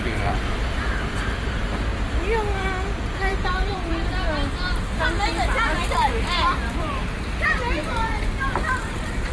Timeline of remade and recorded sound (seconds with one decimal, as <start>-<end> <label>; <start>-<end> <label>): 0.0-3.3 recorded; 3.3-3.9 remade; 3.9-9.3 recorded